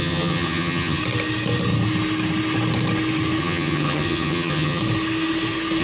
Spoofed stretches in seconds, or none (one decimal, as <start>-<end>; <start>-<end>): 0.0-1.0; 3.4-4.8